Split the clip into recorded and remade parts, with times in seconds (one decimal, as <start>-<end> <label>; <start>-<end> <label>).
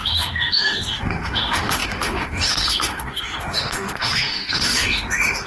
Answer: 0.0-5.5 remade